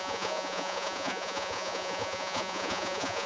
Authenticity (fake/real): fake